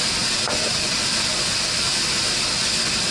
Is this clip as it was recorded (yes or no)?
yes